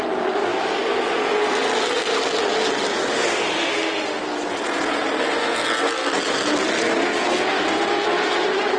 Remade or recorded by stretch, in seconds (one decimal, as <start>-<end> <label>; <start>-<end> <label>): 0.0-3.1 recorded; 3.1-4.2 remade; 4.2-8.8 recorded